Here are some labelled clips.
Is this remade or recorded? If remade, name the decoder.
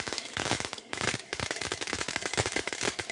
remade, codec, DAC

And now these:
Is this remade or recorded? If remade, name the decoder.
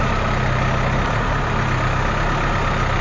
recorded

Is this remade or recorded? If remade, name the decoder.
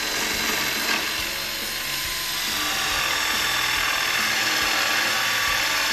recorded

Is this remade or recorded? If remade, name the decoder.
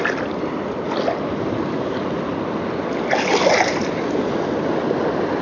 recorded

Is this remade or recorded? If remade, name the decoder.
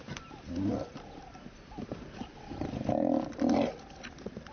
recorded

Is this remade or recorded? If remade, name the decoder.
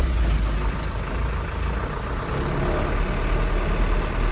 recorded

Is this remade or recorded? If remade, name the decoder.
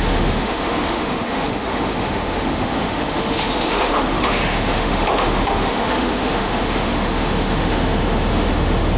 remade, autoencoder, DAC-VAE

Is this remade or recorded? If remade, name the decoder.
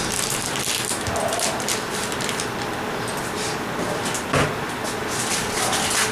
recorded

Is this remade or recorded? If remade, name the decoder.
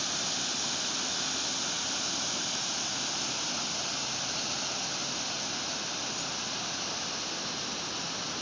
recorded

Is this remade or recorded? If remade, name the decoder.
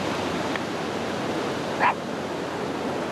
recorded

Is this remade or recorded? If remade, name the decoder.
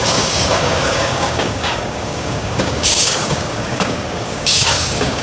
remade, codec, DAC